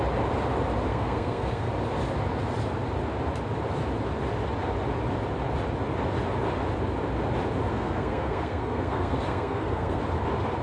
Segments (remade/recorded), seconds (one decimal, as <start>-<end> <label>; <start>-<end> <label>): 0.0-0.9 recorded; 0.9-1.7 remade; 1.7-7.7 recorded; 7.7-10.0 remade; 10.0-10.6 recorded